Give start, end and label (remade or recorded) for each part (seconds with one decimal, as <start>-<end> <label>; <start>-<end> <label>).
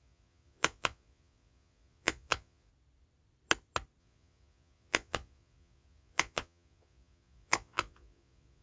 0.0-2.7 remade; 2.7-4.0 recorded; 4.0-8.6 remade